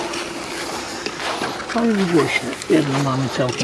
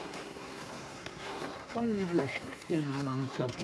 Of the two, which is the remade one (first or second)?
second